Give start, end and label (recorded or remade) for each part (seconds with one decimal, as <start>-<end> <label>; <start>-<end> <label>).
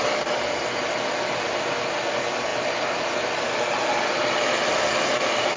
0.0-5.6 recorded